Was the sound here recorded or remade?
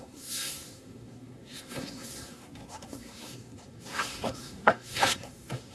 remade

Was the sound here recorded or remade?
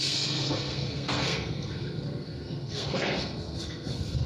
remade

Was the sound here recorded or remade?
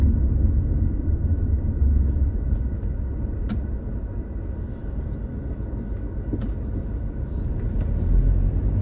recorded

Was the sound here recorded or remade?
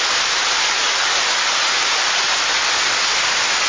recorded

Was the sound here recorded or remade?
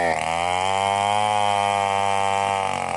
recorded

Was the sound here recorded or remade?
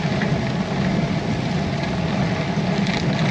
recorded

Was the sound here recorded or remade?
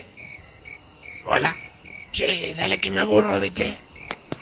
remade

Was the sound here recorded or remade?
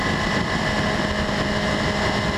recorded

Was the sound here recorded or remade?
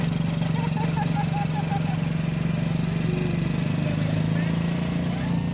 recorded